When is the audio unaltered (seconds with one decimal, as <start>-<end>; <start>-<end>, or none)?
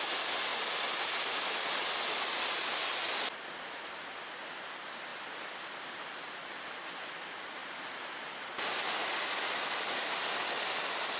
0.0-11.2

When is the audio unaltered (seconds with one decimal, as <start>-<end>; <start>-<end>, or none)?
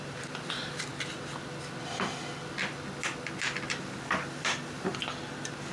0.9-4.3; 4.9-5.7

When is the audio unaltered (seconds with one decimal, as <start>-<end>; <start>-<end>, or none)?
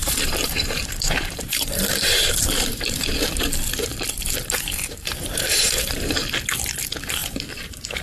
3.4-4.2; 6.2-7.2